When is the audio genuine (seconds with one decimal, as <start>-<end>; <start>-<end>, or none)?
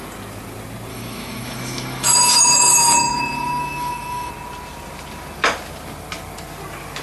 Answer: 0.0-0.9; 4.3-7.0